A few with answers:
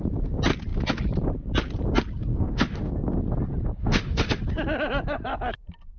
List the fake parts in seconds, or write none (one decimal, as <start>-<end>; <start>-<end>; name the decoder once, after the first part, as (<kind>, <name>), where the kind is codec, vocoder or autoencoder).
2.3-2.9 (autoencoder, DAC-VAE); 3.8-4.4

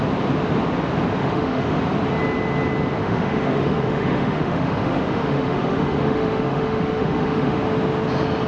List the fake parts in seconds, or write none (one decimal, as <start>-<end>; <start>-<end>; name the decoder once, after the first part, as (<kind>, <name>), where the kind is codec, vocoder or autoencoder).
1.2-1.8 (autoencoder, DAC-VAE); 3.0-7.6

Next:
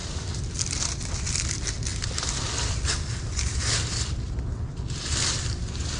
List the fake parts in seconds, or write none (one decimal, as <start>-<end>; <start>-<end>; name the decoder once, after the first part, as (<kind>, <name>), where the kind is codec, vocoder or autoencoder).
none

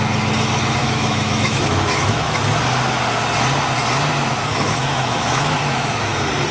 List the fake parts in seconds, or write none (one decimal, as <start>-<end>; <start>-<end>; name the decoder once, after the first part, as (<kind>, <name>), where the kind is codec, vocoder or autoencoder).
0.8-2.4 (autoencoder, DAC-VAE); 4.5-6.0

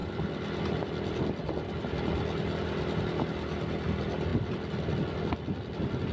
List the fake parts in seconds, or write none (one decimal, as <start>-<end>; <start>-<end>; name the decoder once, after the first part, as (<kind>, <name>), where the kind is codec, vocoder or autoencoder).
none

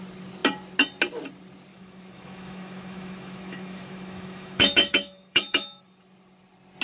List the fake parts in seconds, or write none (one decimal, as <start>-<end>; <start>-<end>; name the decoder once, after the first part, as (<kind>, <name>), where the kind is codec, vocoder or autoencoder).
1.7-5.8 (autoencoder, DAC-VAE)